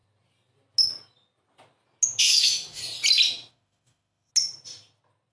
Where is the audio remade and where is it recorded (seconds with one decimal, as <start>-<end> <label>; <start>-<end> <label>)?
0.0-2.2 recorded; 2.2-2.8 remade; 2.8-3.5 recorded; 3.5-4.3 remade; 4.3-5.3 recorded

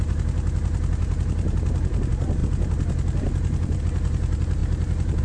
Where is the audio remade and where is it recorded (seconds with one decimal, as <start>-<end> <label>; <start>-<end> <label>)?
0.0-5.2 recorded

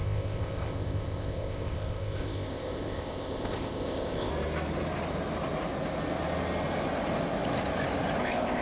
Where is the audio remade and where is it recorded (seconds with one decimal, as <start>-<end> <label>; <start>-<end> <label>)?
0.0-4.3 remade; 4.3-8.2 recorded; 8.2-8.6 remade